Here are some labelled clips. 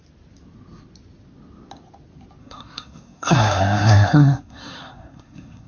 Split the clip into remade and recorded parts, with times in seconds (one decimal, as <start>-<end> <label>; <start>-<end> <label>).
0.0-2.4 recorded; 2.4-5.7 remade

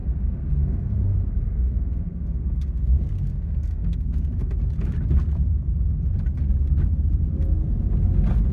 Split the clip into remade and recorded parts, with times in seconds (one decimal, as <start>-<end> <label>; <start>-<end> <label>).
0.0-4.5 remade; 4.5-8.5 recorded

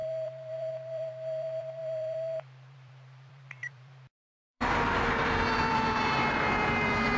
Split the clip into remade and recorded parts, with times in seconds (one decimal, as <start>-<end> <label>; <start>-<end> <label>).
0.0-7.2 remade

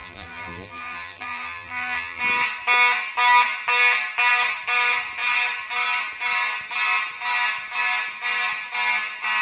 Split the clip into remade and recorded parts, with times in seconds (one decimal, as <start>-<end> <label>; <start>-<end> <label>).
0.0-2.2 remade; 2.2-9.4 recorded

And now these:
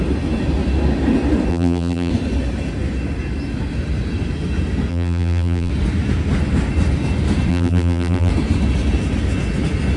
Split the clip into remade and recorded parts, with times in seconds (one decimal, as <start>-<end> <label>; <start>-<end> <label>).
0.0-1.5 recorded; 1.5-2.1 remade; 2.1-4.9 recorded; 4.9-5.7 remade; 5.7-7.5 recorded; 7.5-8.3 remade; 8.3-10.0 recorded

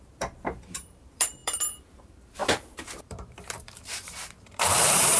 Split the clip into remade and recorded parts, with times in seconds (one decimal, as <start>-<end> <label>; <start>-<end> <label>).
0.0-5.2 remade

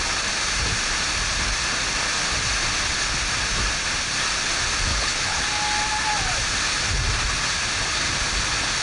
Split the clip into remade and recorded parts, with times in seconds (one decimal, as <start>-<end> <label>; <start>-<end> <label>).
0.0-4.9 recorded; 4.9-5.4 remade; 5.4-8.8 recorded

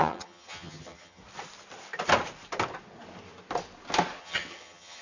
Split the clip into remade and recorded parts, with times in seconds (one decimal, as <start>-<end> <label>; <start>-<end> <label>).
0.0-1.2 remade; 1.2-4.2 recorded; 4.2-5.0 remade